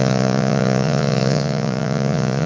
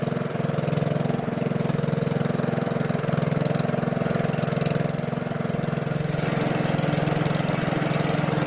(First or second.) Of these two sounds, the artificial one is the first